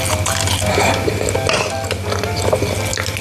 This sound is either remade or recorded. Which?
recorded